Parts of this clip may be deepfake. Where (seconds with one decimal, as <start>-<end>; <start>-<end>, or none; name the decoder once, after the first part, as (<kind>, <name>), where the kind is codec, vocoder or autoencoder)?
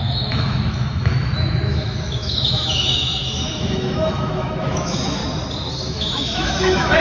0.0-5.2 (autoencoder, DAC-VAE); 5.9-7.0